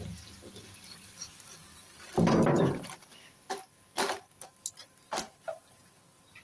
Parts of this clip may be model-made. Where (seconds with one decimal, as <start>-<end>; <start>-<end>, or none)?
none